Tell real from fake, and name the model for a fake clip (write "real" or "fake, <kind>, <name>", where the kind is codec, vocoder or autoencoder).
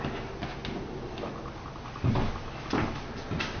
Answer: real